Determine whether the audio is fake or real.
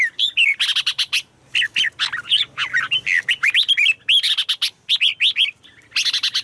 real